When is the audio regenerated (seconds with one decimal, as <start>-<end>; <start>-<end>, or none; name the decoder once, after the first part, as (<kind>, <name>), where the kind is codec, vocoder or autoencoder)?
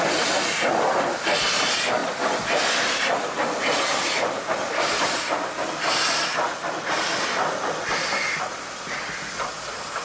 none